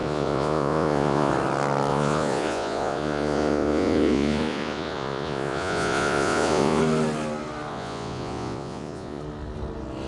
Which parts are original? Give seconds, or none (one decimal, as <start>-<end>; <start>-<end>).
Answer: 1.3-1.9; 6.8-7.7; 9.2-10.1